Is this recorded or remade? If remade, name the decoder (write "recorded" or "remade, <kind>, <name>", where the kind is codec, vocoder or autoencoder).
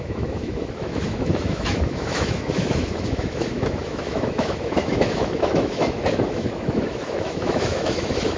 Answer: remade, autoencoder, DAC-VAE